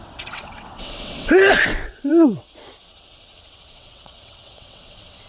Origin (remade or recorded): remade